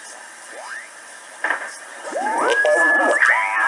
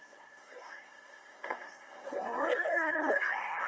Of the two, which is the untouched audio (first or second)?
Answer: first